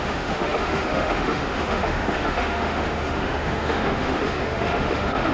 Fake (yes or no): yes